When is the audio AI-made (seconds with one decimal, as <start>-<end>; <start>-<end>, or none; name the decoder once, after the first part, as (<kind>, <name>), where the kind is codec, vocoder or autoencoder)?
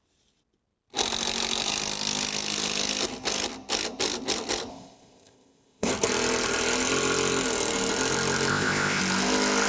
4.7-5.9 (codec, ZipCodec); 8.5-9.0